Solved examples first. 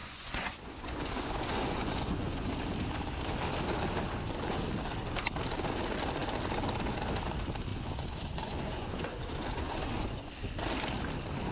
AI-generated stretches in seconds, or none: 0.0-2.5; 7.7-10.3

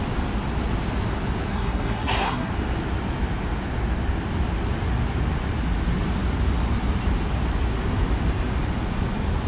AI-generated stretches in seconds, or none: 1.5-2.5

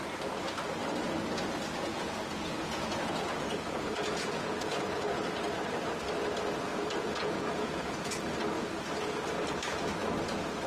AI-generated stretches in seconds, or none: 1.9-5.2; 6.7-8.3

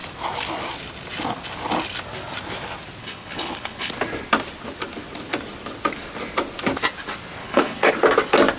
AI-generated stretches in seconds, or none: 3.0-3.9; 7.4-7.9

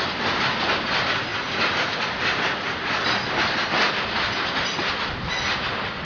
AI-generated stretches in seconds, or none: none

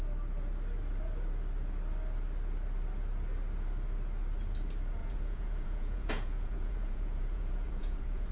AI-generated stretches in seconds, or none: 5.0-8.3

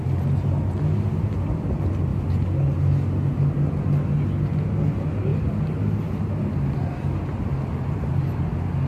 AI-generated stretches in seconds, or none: none